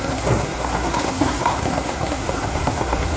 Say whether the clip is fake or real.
fake